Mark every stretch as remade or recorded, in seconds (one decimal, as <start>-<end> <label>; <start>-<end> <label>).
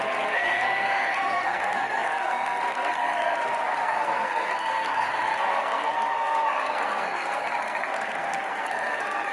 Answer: 0.0-9.3 remade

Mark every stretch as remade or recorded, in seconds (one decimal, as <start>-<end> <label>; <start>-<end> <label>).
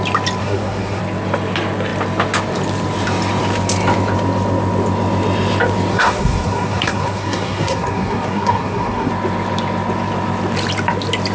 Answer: 0.0-0.4 recorded; 0.4-1.0 remade; 1.0-5.9 recorded; 5.9-9.1 remade; 9.1-11.3 recorded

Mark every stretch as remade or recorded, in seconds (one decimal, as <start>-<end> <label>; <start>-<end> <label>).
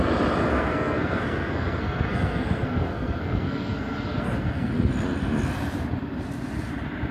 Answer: 0.0-0.5 recorded; 0.5-4.7 remade; 4.7-7.1 recorded